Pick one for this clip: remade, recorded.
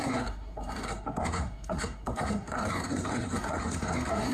remade